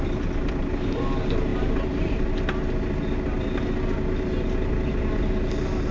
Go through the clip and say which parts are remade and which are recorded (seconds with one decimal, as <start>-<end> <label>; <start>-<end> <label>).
0.0-5.9 recorded